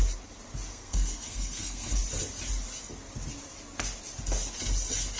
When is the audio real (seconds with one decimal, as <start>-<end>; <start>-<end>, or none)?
0.0-0.7; 2.0-5.2